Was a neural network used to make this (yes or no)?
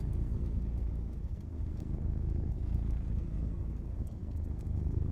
yes